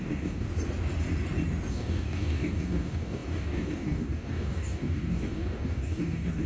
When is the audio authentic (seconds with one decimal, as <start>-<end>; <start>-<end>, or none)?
0.5-1.7